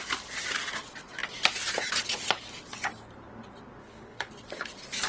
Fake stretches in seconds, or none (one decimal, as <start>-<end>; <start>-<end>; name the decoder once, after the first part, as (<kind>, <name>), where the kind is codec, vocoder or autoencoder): 3.8-4.3 (codec, HILCodec)